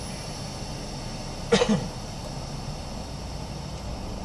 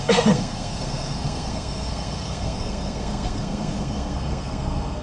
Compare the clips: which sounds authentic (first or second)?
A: first